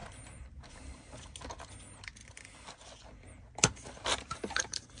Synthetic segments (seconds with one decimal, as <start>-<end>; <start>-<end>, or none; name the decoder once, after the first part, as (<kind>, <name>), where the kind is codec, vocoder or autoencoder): 4.1-5.0 (vocoder, BigVGAN v2)